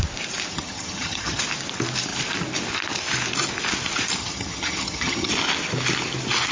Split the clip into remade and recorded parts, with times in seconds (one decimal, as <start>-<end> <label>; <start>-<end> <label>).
0.0-0.5 recorded; 0.5-1.4 remade; 1.4-4.2 recorded; 4.2-5.3 remade; 5.3-6.5 recorded